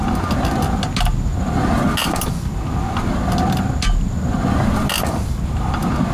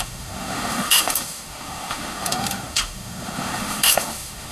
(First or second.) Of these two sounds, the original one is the first